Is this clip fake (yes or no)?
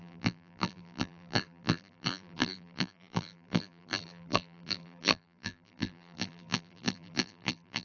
yes